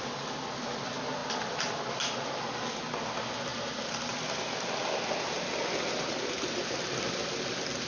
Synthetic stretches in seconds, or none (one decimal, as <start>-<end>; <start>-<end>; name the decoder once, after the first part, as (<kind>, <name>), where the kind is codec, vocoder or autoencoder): none